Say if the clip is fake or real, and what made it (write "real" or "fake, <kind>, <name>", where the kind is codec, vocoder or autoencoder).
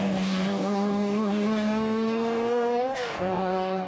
fake, codec, DAC